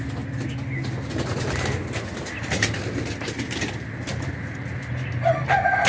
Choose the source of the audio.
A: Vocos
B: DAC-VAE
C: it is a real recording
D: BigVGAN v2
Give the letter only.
C